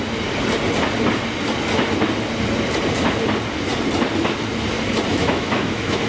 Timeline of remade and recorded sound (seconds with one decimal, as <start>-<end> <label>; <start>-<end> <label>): 0.0-5.1 recorded; 5.1-6.1 remade